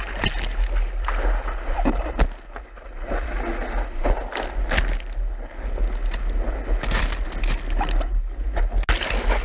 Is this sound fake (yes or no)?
no